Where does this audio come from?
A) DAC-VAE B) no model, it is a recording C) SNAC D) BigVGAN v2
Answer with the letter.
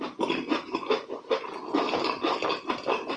B